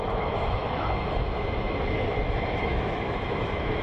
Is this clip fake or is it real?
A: fake